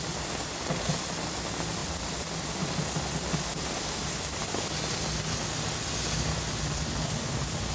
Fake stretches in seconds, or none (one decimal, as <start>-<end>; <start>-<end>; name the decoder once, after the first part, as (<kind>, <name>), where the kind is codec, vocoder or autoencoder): none